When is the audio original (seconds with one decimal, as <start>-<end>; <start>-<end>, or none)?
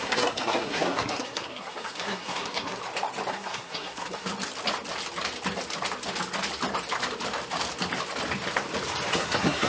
2.8-3.3; 4.3-9.1